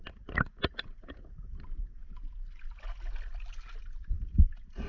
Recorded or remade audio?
recorded